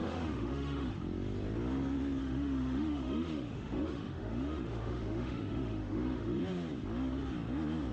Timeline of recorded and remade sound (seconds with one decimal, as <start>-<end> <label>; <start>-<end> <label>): 0.0-0.9 remade; 0.9-2.2 recorded; 2.2-6.4 remade; 6.4-7.9 recorded